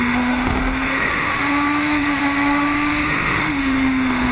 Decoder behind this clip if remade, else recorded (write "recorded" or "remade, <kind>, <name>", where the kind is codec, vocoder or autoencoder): remade, autoencoder, DAC-VAE